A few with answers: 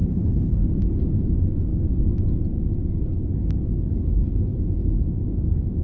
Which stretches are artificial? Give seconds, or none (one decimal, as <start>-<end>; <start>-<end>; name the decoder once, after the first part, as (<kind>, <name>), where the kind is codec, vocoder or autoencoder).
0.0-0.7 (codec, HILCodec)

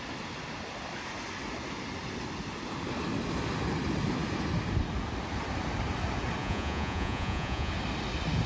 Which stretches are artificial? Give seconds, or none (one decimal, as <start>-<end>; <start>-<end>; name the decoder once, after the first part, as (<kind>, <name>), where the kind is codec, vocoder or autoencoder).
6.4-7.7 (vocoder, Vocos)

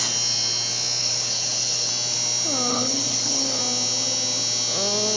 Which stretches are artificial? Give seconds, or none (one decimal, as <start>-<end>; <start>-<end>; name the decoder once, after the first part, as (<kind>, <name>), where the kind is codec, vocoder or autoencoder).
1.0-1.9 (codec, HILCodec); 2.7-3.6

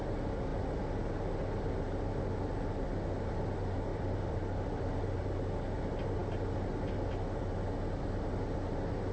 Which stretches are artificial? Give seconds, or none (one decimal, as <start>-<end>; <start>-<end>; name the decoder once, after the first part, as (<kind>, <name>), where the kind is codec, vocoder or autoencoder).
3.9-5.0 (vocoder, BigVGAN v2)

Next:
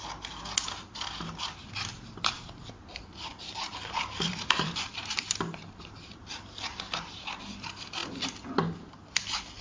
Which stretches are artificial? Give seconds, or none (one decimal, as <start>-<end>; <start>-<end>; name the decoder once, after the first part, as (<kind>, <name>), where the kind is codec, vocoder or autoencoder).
1.9-2.7 (vocoder, BigVGAN v2); 3.3-6.2

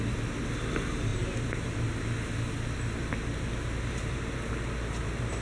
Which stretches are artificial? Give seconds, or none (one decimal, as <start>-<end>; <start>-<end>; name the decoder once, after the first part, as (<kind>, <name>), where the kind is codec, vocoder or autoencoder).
none

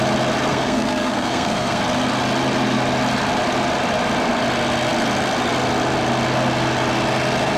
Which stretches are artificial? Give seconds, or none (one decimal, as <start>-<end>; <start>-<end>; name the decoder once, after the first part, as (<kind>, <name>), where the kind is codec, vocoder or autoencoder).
0.5-1.8 (codec, SNAC)